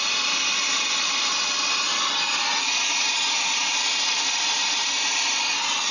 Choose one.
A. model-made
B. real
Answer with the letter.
B